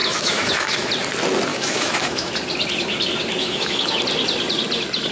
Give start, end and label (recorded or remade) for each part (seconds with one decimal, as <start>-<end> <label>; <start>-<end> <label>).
0.0-0.9 remade; 0.9-1.5 recorded; 1.5-2.3 remade; 2.3-3.4 recorded; 3.4-3.9 remade; 3.9-5.1 recorded